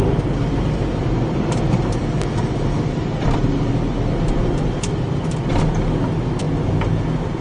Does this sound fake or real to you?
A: real